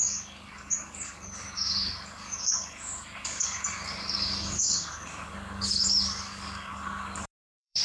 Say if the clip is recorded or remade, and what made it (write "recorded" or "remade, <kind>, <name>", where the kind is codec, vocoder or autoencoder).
remade, codec, DAC